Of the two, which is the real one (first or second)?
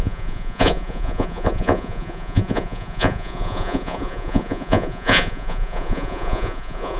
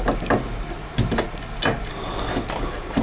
second